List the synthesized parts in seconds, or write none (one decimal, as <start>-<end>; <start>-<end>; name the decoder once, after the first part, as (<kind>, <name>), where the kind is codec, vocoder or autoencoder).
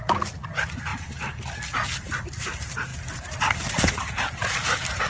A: none